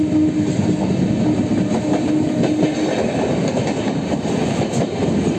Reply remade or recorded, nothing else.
recorded